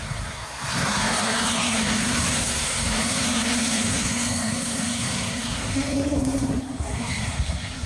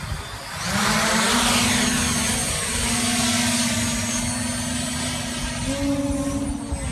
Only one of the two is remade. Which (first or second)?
first